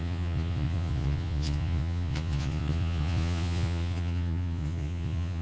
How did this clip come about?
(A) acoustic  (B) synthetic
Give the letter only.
B